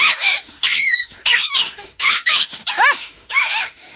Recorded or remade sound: remade